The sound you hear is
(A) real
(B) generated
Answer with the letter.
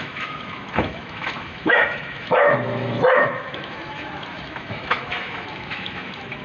B